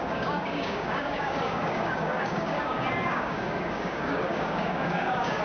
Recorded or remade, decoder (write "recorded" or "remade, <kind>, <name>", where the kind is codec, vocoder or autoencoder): remade, codec, DAC